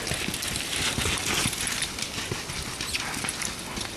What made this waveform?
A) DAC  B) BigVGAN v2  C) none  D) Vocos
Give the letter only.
C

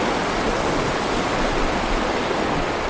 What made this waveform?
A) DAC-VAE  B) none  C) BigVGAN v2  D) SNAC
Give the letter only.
C